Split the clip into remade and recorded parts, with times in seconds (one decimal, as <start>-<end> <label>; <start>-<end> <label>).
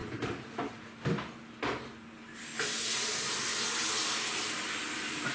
0.0-5.3 recorded